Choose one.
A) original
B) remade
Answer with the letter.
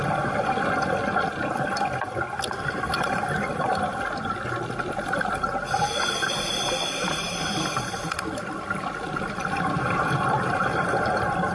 A